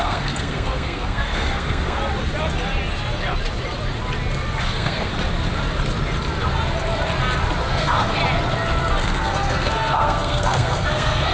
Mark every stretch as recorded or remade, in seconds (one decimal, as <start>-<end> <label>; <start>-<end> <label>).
0.0-2.0 remade; 2.0-4.6 recorded; 4.6-5.1 remade; 5.1-7.7 recorded; 7.7-8.2 remade; 8.2-9.0 recorded; 9.0-11.3 remade